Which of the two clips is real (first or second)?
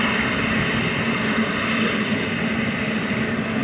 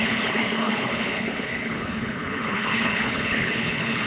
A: first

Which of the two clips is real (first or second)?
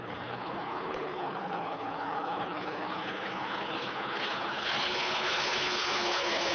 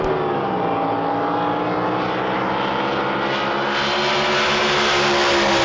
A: second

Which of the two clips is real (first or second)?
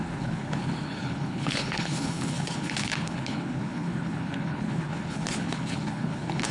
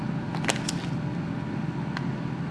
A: second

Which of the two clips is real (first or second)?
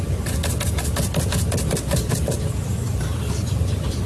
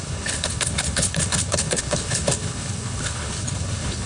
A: first